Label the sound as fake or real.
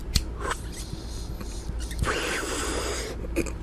real